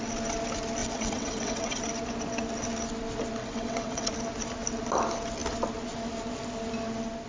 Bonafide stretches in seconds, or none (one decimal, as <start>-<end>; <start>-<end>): 0.0-0.8; 1.8-3.4; 4.1-7.3